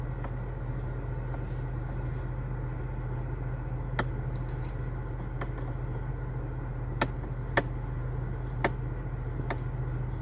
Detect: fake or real real